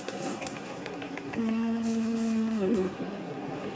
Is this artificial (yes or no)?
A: yes